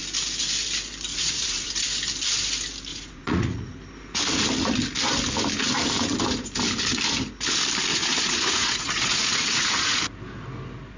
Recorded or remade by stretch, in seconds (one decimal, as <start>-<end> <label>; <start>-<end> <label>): 0.0-1.1 recorded; 1.1-1.7 remade; 1.7-2.9 recorded; 2.9-3.7 remade; 3.7-7.9 recorded; 7.9-10.0 remade; 10.0-11.0 recorded